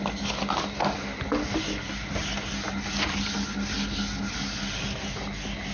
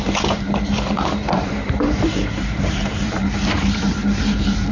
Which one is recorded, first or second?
first